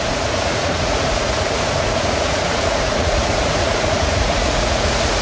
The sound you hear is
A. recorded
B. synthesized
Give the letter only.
B